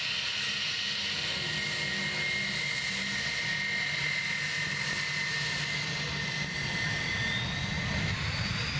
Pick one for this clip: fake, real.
real